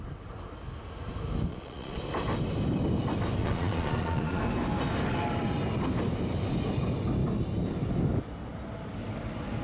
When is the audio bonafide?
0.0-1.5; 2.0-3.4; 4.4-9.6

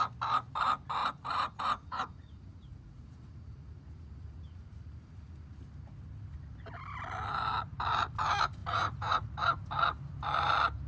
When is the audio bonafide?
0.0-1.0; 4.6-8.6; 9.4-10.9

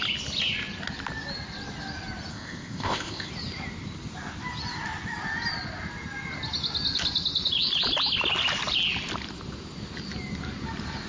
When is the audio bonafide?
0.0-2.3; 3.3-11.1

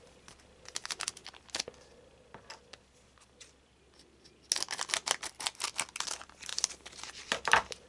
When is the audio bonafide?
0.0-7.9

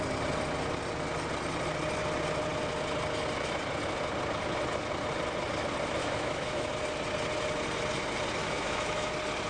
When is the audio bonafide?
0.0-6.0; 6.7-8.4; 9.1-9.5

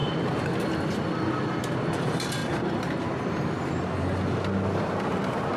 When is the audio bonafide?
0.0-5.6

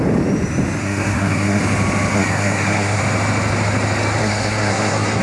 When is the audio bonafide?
0.0-0.8; 1.6-2.1; 3.0-4.2

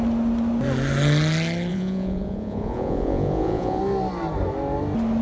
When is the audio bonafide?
0.0-1.7; 3.8-5.2